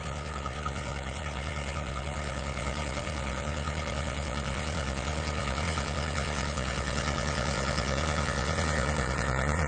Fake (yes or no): yes